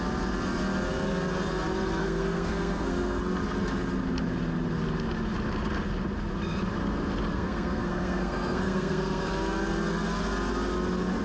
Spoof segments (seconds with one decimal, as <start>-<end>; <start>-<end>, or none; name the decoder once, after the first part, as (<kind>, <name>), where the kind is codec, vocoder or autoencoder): 2.0-3.2 (codec, SNAC); 7.3-9.3